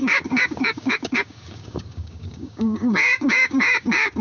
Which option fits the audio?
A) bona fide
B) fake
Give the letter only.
B